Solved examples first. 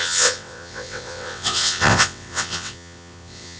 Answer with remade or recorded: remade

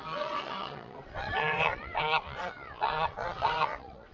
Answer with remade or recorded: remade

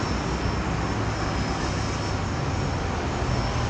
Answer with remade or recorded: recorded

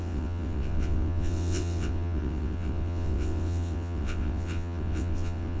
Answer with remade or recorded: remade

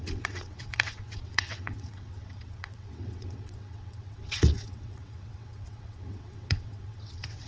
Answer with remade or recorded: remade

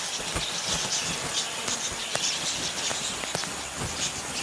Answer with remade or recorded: recorded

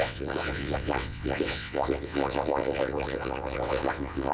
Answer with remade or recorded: remade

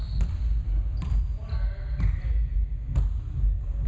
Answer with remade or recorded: recorded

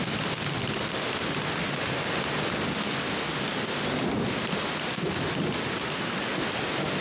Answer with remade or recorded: recorded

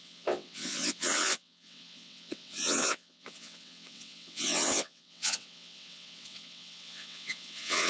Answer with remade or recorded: remade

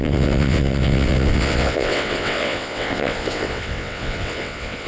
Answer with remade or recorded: remade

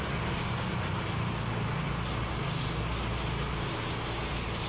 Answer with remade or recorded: recorded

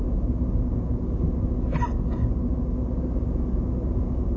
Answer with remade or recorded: recorded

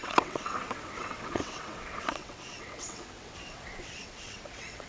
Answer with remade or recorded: remade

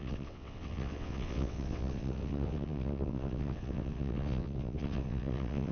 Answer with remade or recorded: remade